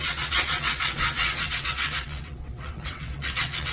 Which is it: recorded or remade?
remade